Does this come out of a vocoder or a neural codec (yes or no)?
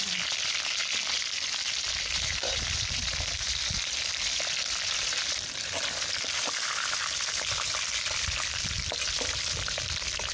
yes